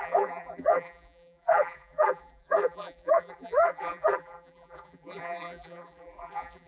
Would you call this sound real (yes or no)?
no